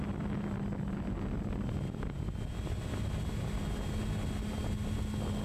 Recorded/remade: recorded